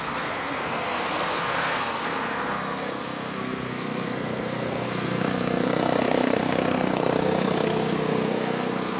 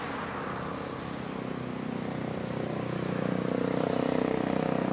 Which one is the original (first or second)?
second